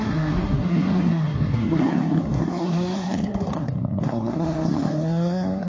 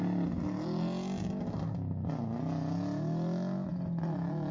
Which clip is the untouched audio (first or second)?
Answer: second